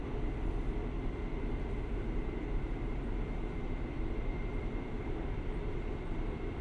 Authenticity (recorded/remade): remade